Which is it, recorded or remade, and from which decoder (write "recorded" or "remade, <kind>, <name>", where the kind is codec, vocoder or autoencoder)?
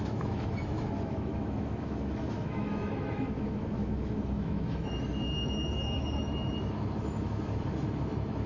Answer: remade, autoencoder, DAC-VAE